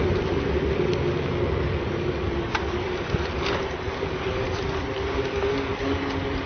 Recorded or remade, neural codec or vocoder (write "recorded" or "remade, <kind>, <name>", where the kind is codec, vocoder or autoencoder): recorded